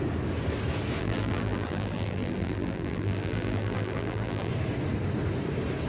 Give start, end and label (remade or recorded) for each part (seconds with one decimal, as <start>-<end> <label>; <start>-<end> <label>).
0.0-1.0 recorded; 1.0-4.5 remade; 4.5-5.9 recorded